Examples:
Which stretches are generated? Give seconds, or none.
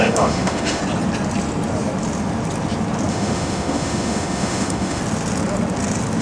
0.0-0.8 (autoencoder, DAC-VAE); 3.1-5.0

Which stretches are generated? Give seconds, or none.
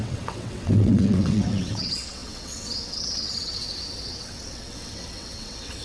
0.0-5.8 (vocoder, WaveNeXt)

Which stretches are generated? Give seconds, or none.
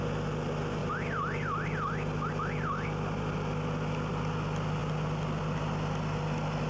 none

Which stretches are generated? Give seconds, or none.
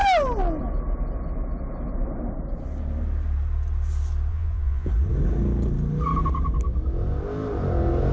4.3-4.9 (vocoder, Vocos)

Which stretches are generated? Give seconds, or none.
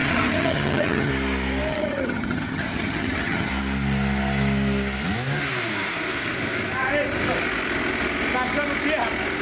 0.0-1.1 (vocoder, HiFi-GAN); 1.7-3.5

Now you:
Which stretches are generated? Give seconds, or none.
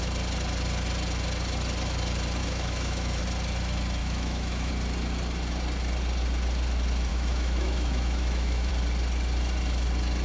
2.4-3.2 (autoencoder, DAC-VAE); 4.0-4.7; 7.1-8.7